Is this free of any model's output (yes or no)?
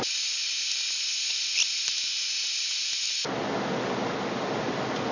yes